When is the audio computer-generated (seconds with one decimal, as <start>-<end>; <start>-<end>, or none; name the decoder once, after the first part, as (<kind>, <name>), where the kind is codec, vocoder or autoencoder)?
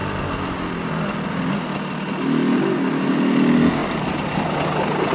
none